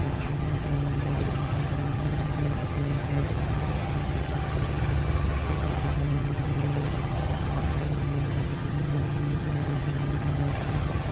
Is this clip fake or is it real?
fake